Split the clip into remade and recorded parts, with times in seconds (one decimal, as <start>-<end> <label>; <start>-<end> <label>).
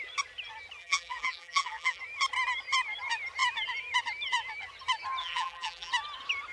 0.0-0.8 recorded; 0.8-2.0 remade; 2.0-5.2 recorded; 5.2-5.9 remade; 5.9-6.5 recorded